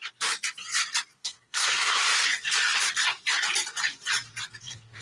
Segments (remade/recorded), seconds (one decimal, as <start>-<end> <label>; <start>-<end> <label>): 0.0-1.1 recorded; 1.1-2.0 remade; 2.0-4.6 recorded; 4.6-5.0 remade